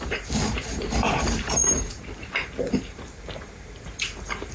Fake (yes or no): yes